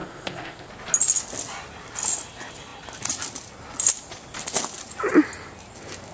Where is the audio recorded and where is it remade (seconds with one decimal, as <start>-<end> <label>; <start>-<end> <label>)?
0.0-0.7 remade; 0.7-6.1 recorded